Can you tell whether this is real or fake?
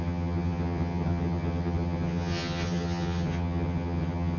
fake